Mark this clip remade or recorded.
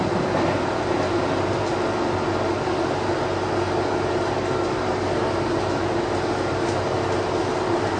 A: recorded